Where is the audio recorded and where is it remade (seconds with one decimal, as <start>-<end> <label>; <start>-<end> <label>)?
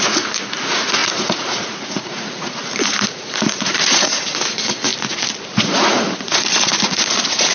0.0-4.9 remade; 4.9-5.5 recorded; 5.5-7.5 remade